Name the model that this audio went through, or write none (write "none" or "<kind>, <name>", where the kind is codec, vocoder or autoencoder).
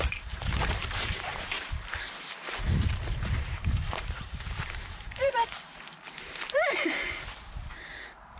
vocoder, BigVGAN v2